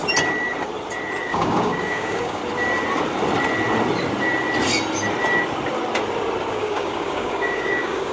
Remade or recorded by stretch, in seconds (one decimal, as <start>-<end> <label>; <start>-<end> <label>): 0.0-1.2 recorded; 1.2-2.4 remade; 2.4-6.5 recorded; 6.5-8.1 remade